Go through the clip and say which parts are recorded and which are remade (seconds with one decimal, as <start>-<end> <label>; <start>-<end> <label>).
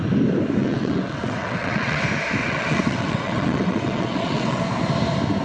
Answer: 0.0-0.6 recorded; 0.6-2.0 remade; 2.0-2.4 recorded; 2.4-4.6 remade; 4.6-5.4 recorded